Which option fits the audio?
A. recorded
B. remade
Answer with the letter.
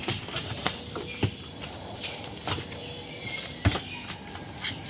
A